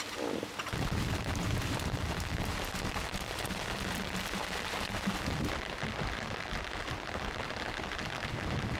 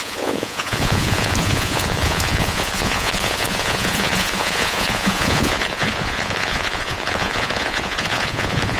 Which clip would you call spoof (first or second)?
second